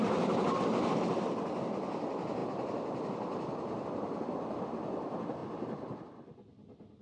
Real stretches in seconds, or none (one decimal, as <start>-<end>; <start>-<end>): 0.0-7.0